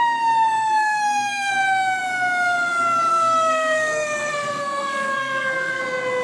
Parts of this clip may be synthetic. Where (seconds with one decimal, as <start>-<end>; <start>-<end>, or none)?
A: 0.6-1.5; 3.1-5.8